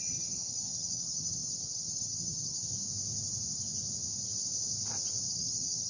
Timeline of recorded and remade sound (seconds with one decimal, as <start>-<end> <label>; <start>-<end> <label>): 0.0-2.7 remade; 2.7-5.3 recorded; 5.3-5.9 remade